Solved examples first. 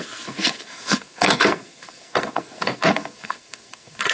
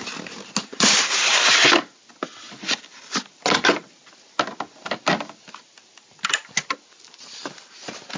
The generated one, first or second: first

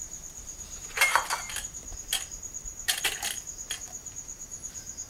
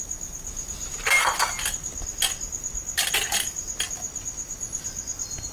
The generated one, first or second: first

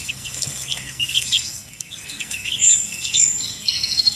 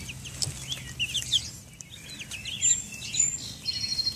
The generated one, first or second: first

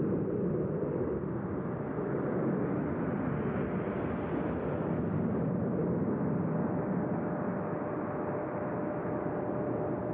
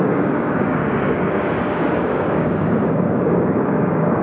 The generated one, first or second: second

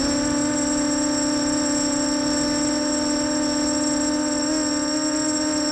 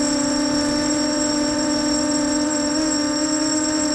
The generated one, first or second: second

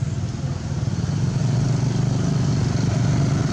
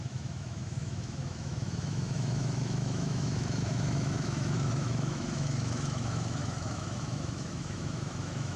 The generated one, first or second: second